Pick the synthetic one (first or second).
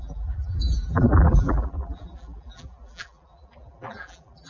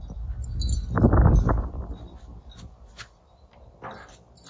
first